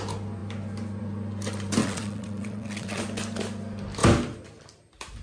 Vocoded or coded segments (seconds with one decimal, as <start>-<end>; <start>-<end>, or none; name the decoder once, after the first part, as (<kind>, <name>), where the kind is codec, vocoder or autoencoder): 1.8-3.0 (vocoder, WaveNeXt)